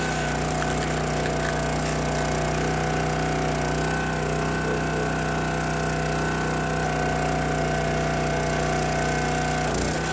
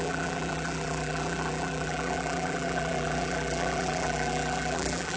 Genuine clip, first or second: first